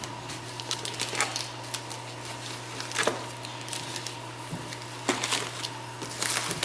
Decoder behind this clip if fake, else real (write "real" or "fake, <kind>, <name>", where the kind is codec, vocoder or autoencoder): real